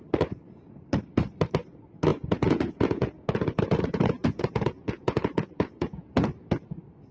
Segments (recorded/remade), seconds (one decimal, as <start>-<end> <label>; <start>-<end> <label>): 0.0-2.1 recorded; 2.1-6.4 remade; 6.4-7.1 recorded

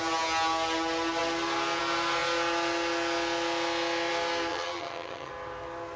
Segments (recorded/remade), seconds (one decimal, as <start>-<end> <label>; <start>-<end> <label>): 0.0-4.5 recorded; 4.5-5.3 remade; 5.3-6.0 recorded

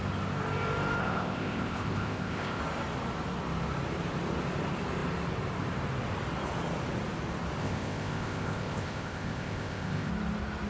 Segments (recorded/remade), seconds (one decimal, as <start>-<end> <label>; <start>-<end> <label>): 0.0-1.0 recorded; 1.0-2.6 remade; 2.6-7.6 recorded; 7.6-10.1 remade; 10.1-10.7 recorded